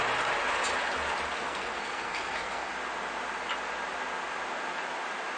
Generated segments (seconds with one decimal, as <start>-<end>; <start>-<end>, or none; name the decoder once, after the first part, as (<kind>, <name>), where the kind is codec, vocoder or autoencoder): 1.4-2.7 (codec, SNAC)